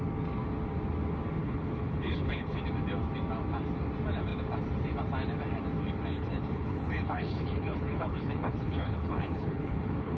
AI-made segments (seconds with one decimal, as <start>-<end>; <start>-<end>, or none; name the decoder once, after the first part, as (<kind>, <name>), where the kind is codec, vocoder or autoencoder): 1.4-2.6 (codec, HILCodec); 6.1-10.2